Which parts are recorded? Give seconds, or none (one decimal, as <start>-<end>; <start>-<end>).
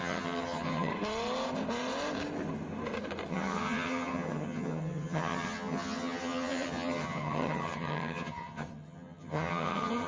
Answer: 0.9-3.3